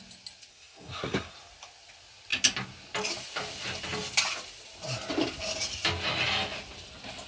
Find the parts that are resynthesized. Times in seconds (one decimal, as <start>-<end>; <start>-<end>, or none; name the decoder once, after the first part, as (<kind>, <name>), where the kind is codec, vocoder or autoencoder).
0.5-1.3 (codec, SNAC)